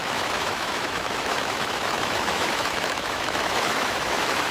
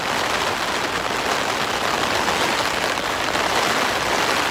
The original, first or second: second